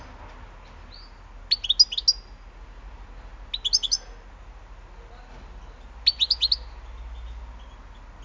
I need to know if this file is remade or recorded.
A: recorded